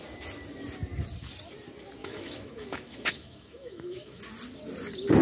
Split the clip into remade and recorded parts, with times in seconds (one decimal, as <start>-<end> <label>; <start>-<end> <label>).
0.0-2.0 recorded; 2.0-4.2 remade; 4.2-5.2 recorded